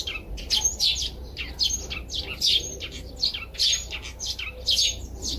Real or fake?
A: real